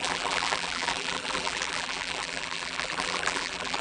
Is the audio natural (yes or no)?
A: no